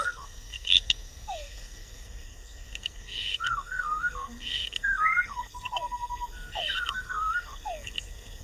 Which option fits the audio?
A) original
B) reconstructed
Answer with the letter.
B